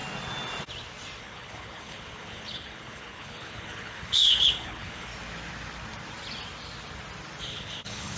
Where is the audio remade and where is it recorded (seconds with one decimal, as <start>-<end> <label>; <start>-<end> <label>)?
0.0-1.2 recorded; 1.2-5.1 remade; 5.1-7.4 recorded; 7.4-8.2 remade